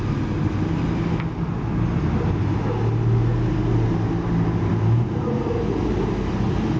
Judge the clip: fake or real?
real